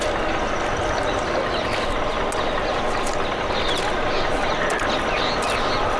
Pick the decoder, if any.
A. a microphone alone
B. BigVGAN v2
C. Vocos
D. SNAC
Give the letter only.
A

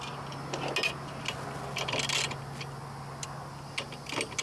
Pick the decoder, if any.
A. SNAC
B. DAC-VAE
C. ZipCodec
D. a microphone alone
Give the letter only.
D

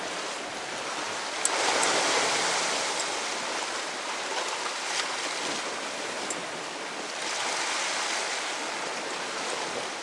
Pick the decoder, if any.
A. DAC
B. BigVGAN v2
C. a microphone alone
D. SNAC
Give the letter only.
C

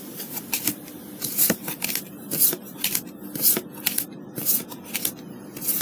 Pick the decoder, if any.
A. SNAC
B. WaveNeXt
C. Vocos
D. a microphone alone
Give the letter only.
D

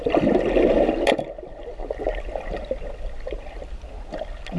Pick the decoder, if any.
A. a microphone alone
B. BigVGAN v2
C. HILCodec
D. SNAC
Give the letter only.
A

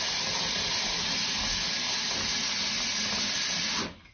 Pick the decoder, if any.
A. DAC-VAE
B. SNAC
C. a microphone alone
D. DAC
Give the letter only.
C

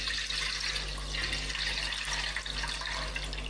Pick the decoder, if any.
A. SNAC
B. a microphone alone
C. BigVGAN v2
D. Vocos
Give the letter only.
B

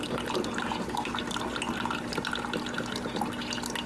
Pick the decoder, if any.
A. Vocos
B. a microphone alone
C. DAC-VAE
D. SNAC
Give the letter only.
B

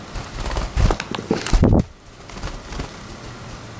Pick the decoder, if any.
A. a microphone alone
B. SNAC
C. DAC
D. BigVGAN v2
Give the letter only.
A